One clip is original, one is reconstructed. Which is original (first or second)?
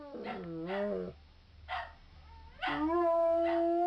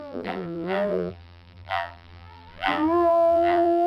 first